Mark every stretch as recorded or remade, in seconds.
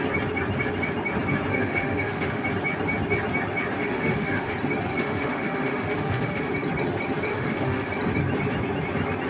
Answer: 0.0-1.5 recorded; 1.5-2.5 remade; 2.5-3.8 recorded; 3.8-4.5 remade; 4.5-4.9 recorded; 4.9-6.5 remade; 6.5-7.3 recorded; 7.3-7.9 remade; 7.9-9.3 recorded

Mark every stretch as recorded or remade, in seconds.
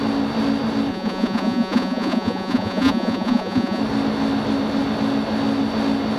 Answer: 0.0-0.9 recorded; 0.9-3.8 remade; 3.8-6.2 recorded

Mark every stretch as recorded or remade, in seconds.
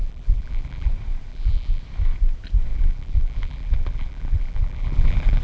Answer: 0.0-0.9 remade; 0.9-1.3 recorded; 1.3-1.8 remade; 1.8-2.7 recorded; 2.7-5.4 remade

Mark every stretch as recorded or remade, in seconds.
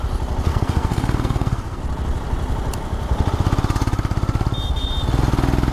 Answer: 0.0-0.5 recorded; 0.5-1.8 remade; 1.8-5.7 recorded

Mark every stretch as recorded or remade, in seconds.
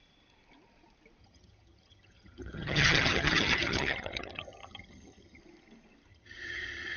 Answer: 0.0-1.2 recorded; 1.2-5.4 remade; 5.4-6.1 recorded; 6.1-7.0 remade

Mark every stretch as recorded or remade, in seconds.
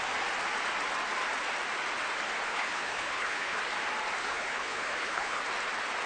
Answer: 0.0-2.5 recorded; 2.5-3.6 remade; 3.6-4.2 recorded; 4.2-5.4 remade; 5.4-6.1 recorded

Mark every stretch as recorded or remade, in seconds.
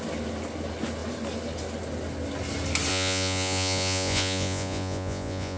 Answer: 0.0-2.9 recorded; 2.9-5.6 remade